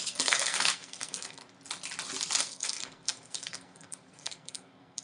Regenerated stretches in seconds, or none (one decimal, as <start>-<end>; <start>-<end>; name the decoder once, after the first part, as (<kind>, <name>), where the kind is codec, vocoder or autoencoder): 0.0-1.4 (codec, SNAC); 2.4-5.0